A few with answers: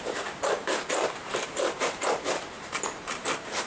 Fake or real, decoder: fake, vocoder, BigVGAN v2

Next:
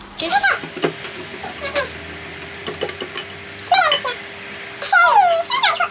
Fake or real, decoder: real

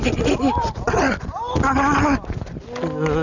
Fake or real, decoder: real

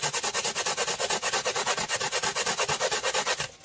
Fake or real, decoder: real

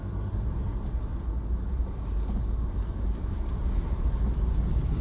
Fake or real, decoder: real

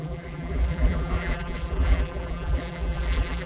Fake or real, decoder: fake, vocoder, BigVGAN v2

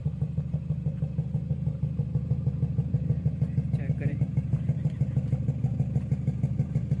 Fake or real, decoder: fake, vocoder, BigVGAN v2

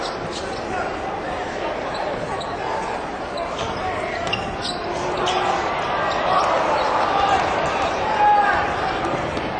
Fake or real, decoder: real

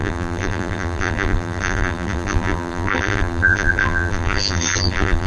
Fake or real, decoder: fake, vocoder, BigVGAN v2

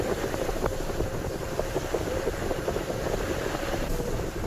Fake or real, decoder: fake, vocoder, BigVGAN v2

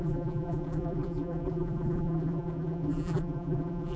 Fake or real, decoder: fake, vocoder, BigVGAN v2